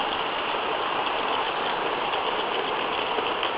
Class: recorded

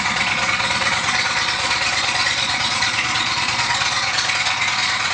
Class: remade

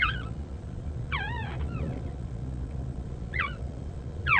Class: remade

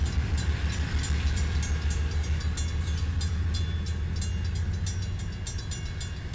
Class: recorded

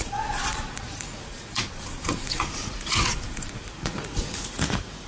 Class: remade